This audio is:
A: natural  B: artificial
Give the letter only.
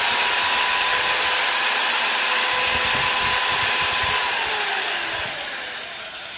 A